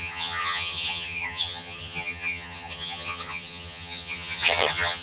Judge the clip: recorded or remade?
remade